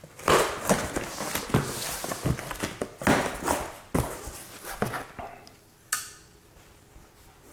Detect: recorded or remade recorded